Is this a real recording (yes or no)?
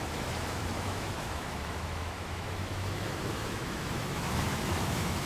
no